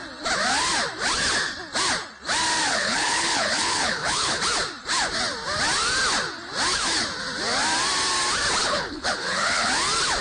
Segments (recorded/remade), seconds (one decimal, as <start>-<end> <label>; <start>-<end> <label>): 0.0-2.7 recorded; 2.7-4.4 remade; 4.4-8.6 recorded; 8.6-9.7 remade; 9.7-10.2 recorded